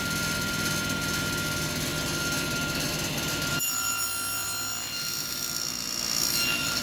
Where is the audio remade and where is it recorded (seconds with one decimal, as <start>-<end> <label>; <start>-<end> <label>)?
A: 0.0-6.8 recorded